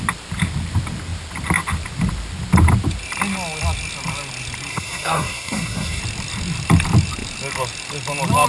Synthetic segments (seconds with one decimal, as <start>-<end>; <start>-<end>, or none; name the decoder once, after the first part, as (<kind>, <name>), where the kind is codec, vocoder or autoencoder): 4.7-6.0 (codec, SNAC)